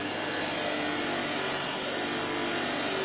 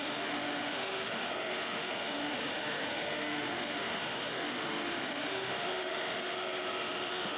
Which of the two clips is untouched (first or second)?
first